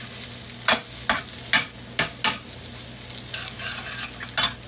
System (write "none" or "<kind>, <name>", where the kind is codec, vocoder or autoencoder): none